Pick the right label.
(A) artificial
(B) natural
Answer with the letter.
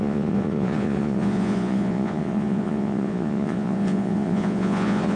A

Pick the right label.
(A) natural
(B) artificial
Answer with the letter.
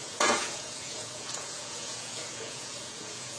B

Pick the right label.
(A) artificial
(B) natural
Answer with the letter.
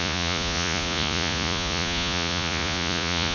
A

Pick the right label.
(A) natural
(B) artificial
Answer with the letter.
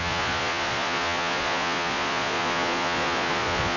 B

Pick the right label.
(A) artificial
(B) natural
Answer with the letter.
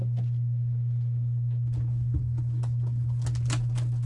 B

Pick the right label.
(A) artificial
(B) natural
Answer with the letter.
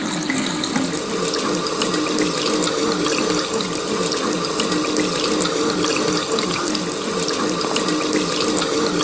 B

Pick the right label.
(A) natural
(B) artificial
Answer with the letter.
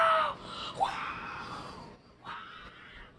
A